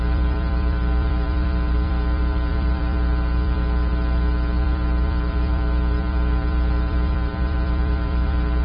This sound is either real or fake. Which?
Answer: fake